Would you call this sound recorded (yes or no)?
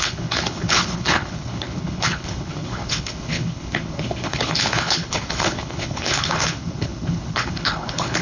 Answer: no